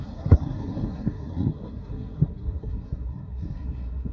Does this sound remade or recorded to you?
remade